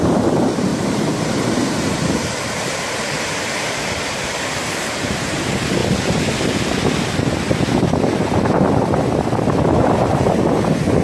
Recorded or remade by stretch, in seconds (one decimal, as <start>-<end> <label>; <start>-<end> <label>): 0.0-5.8 remade; 5.8-9.6 recorded; 9.6-11.0 remade